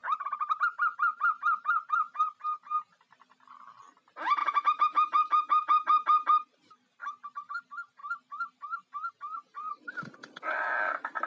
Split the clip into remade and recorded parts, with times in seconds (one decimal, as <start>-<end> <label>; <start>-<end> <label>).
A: 0.0-4.4 recorded; 4.4-7.6 remade; 7.6-11.3 recorded

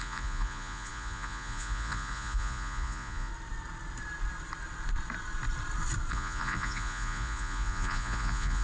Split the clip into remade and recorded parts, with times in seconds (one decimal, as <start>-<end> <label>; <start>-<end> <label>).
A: 0.0-3.3 remade; 3.3-6.1 recorded; 6.1-8.6 remade